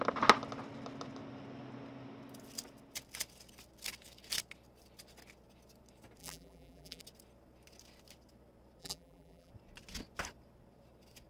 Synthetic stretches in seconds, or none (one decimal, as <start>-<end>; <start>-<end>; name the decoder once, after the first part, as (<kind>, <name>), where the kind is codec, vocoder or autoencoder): 6.2-7.0 (vocoder, BigVGAN v2); 8.8-9.5